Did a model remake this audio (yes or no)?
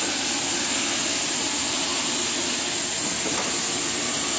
no